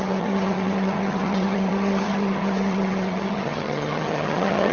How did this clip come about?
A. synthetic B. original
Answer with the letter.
A